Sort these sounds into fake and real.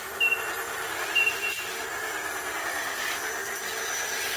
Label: real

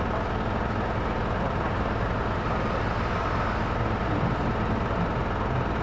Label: real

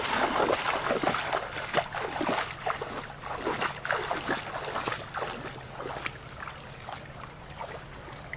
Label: real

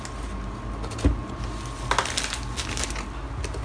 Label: real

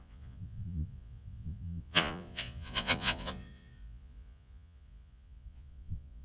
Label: fake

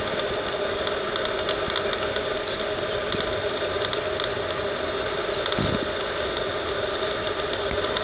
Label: real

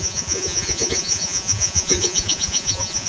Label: fake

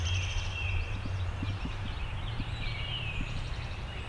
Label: fake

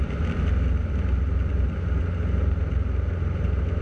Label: real